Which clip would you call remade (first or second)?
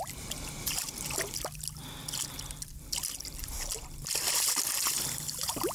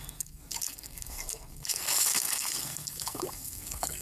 second